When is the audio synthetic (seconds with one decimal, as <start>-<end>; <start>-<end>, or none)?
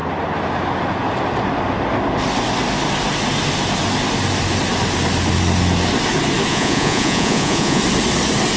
6.5-7.8